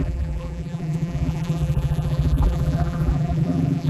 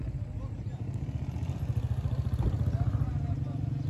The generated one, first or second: first